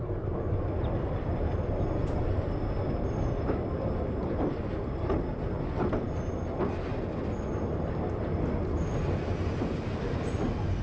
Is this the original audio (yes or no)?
yes